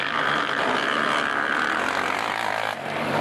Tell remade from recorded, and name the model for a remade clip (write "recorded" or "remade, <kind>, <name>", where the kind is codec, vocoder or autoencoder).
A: recorded